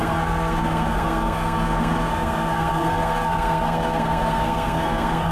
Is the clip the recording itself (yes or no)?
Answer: no